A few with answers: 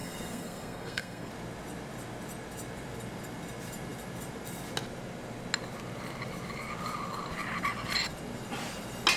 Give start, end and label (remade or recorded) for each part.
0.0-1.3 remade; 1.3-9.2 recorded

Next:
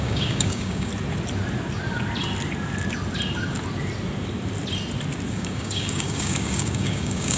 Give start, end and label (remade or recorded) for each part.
0.0-0.9 remade; 0.9-5.3 recorded; 5.3-7.4 remade

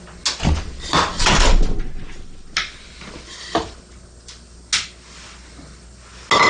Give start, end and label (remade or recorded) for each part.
0.0-6.5 recorded